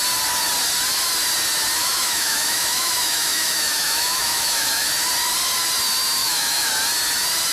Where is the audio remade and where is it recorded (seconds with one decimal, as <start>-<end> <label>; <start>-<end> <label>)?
0.0-1.8 recorded; 1.8-4.9 remade; 4.9-6.2 recorded; 6.2-6.7 remade; 6.7-7.5 recorded